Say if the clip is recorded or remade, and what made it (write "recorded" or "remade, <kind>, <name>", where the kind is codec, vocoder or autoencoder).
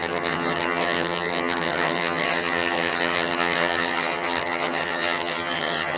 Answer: remade, vocoder, HiFi-GAN